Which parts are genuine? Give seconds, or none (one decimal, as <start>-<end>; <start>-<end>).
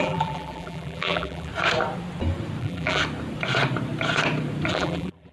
1.5-2.6; 3.0-4.7